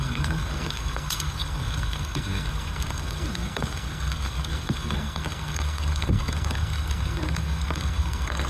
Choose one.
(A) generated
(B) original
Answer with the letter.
A